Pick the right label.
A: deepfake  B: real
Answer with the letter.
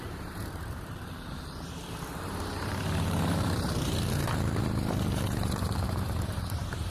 A